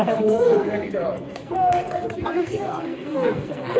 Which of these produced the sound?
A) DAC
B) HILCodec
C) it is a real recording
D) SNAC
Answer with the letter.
D